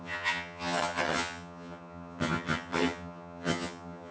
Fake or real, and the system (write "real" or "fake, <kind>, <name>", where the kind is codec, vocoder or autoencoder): fake, vocoder, HiFi-GAN